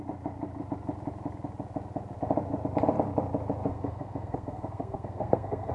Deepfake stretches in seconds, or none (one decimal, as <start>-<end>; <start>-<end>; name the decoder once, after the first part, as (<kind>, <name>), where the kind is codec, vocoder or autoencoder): 3.7-5.7 (codec, SNAC)